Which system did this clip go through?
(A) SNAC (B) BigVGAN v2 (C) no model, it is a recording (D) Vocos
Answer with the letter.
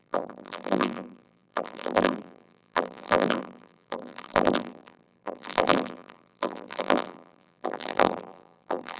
B